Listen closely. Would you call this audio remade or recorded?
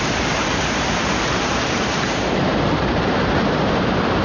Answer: remade